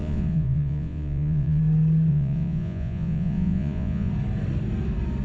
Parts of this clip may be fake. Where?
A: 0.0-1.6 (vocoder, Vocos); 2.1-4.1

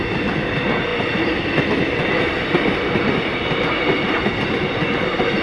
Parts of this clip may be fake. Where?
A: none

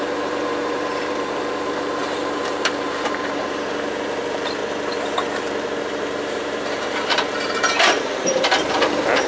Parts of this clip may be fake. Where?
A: 0.0-4.6 (vocoder, BigVGAN v2); 5.8-9.3